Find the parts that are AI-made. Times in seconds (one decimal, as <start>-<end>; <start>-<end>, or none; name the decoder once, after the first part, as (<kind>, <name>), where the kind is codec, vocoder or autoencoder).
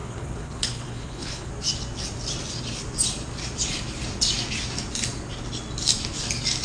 0.0-1.5 (codec, HILCodec)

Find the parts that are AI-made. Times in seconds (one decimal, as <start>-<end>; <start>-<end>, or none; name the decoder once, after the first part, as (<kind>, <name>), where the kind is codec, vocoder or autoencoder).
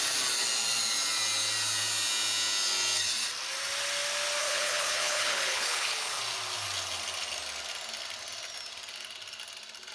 4.4-6.2 (codec, HILCodec)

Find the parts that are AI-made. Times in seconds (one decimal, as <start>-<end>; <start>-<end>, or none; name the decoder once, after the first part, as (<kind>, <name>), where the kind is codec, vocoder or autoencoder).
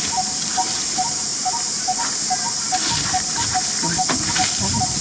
none